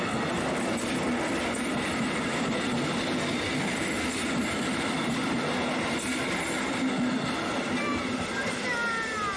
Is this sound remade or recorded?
recorded